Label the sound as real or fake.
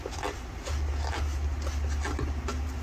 real